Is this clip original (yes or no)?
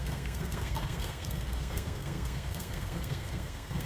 no